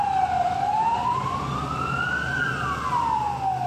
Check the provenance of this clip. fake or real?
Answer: fake